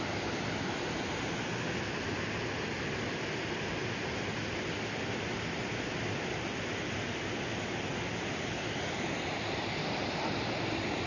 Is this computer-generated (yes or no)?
no